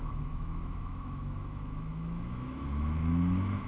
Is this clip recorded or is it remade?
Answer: remade